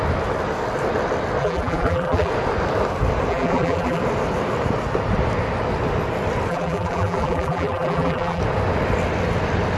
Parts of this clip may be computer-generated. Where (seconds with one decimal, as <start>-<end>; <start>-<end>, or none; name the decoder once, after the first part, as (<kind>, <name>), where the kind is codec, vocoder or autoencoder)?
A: 1.4-2.3 (vocoder, BigVGAN v2); 3.3-4.0; 6.5-8.4